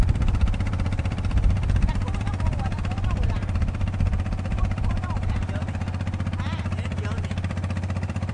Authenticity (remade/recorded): remade